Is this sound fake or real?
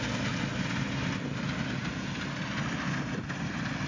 real